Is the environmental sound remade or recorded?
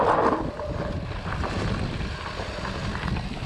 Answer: recorded